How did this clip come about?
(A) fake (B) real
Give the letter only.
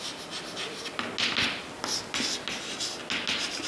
B